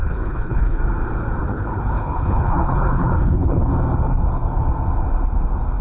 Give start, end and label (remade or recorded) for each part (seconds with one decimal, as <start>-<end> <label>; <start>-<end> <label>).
0.0-0.8 remade; 0.8-1.4 recorded; 1.4-3.7 remade; 3.7-5.8 recorded